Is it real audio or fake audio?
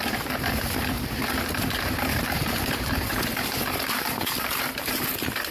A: fake